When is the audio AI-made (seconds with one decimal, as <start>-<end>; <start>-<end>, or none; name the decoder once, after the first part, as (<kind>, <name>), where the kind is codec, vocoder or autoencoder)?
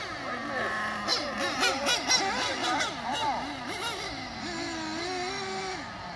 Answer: none